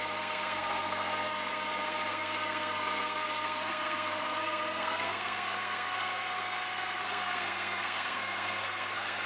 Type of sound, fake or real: fake